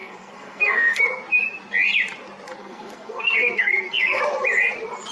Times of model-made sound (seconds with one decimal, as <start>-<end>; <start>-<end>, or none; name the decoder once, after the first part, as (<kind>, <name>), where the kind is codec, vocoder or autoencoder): 0.0-1.0 (codec, SNAC); 2.6-4.2